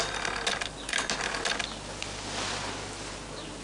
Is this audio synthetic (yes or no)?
no